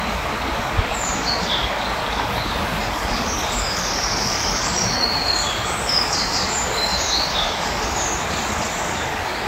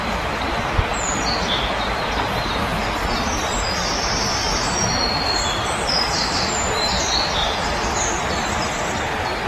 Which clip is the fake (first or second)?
first